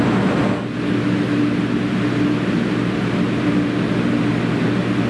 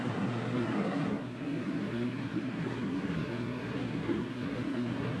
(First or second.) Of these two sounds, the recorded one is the first